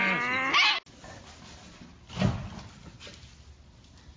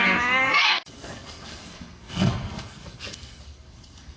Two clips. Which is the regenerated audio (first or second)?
second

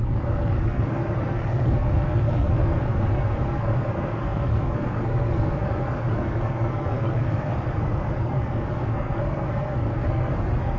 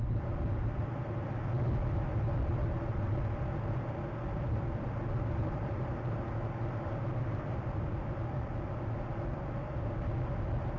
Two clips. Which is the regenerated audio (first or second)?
first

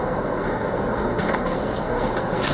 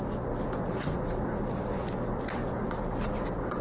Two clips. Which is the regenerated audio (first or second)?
first